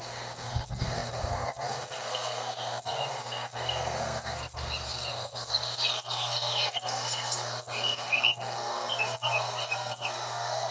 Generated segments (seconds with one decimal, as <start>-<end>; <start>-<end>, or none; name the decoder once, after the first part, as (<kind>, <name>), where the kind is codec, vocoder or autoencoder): 0.0-10.7 (codec, SNAC)

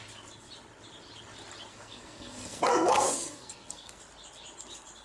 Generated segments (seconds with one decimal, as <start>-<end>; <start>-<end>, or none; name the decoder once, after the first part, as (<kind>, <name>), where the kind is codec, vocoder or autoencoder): 1.7-4.0 (codec, SNAC)

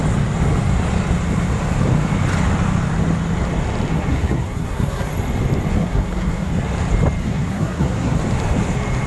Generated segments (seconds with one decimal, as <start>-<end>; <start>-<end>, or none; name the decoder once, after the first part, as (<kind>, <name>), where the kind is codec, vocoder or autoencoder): 3.9-5.1 (codec, SNAC); 5.7-6.5; 7.2-8.2

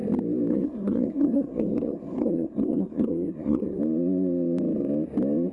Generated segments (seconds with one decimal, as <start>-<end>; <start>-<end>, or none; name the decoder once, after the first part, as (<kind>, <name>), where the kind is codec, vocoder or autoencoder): 0.5-3.8 (codec, SNAC)

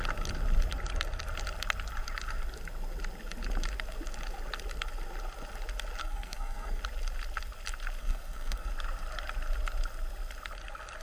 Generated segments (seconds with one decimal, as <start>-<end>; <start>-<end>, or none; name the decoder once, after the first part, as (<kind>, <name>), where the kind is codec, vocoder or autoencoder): 6.0-6.8 (codec, SNAC); 8.0-8.7

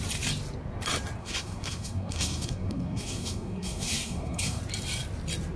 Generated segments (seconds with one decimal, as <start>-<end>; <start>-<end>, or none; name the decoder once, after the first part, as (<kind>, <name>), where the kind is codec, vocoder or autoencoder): 1.2-4.6 (codec, SNAC)

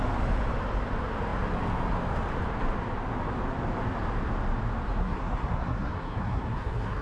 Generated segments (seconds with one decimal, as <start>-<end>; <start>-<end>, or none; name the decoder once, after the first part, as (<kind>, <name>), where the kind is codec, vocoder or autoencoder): 5.0-7.0 (codec, SNAC)